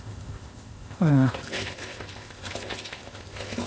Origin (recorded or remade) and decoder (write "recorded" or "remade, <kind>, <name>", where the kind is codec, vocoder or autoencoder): remade, codec, ZipCodec